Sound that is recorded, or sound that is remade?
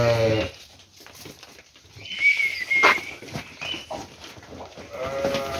recorded